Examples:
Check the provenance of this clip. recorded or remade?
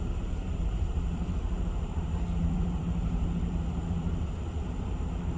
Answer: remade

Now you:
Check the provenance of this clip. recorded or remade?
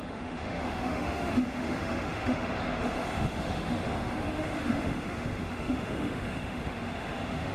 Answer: remade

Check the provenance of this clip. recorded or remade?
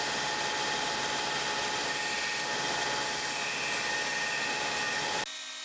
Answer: recorded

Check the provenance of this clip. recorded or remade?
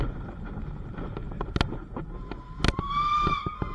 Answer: recorded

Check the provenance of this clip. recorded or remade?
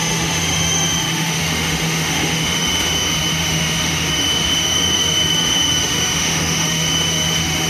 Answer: remade